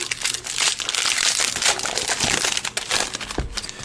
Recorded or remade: recorded